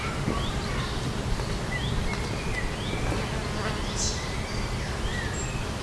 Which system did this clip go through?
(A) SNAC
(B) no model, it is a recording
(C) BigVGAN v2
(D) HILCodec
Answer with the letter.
B